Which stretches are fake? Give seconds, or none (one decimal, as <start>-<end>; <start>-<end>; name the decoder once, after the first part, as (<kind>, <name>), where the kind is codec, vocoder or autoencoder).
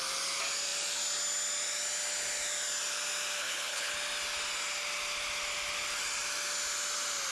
3.4-3.9 (codec, HILCodec)